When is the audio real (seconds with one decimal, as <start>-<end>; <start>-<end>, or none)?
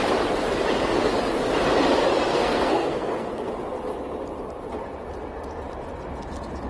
0.0-2.3; 3.5-6.7